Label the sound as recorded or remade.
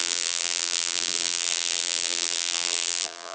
remade